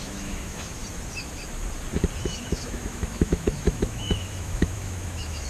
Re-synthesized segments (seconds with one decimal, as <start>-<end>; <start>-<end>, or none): 0.0-0.8; 2.2-5.5